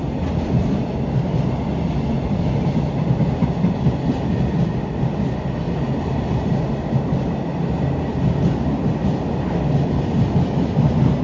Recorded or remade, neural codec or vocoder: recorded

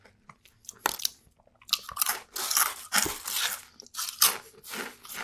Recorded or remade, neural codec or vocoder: recorded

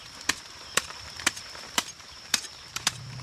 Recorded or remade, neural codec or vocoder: remade, vocoder, BigVGAN v2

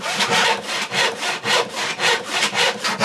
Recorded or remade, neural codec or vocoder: remade, vocoder, BigVGAN v2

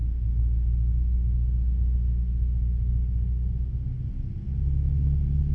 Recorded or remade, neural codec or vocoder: recorded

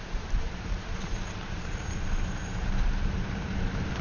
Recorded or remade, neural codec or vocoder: remade, vocoder, BigVGAN v2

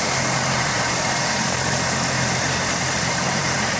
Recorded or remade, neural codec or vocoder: remade, vocoder, BigVGAN v2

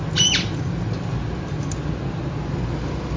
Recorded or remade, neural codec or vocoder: recorded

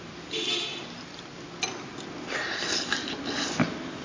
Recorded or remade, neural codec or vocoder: recorded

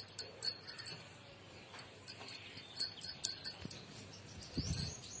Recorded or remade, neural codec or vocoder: remade, vocoder, BigVGAN v2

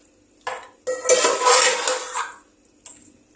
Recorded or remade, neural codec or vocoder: recorded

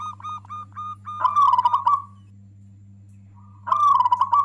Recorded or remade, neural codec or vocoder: recorded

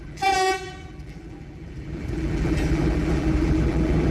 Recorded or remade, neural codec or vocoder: remade, vocoder, BigVGAN v2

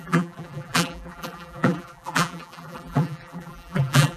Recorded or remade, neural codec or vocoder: remade, vocoder, BigVGAN v2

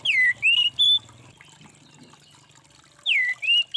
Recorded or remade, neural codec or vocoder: recorded